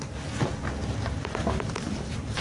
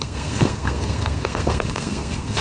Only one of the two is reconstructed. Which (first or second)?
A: second